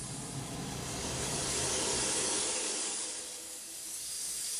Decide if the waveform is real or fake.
fake